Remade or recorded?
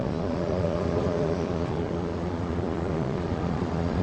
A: remade